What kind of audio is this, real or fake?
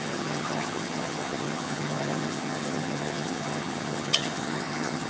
fake